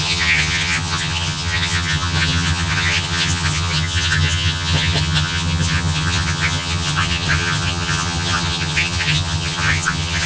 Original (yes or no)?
no